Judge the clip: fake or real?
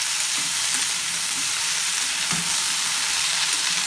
fake